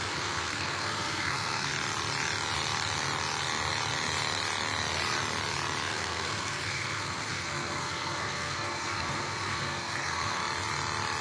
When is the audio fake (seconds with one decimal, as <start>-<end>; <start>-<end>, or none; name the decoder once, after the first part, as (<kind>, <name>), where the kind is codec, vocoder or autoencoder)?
0.0-1.7 (codec, SNAC); 5.9-10.4

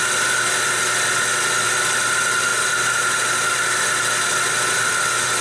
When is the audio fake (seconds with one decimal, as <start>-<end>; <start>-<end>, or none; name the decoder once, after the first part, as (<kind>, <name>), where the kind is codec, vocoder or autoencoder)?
none

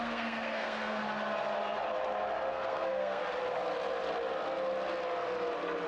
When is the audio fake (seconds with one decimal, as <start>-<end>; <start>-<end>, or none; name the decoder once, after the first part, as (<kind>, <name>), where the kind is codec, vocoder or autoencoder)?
0.0-1.0 (codec, SNAC); 2.5-3.2

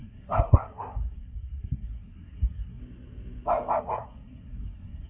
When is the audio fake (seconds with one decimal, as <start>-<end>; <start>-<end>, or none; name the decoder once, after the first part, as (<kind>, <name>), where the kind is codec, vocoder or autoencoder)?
0.0-2.8 (codec, SNAC); 3.8-5.1

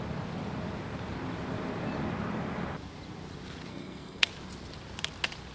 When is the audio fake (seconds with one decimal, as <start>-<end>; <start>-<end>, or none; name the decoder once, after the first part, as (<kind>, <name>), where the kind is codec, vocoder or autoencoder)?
3.7-4.3 (codec, SNAC)

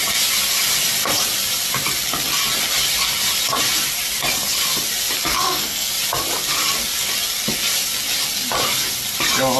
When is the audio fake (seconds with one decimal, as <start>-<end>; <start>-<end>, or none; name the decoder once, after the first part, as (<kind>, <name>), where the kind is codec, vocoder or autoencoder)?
5.3-5.9 (codec, SNAC)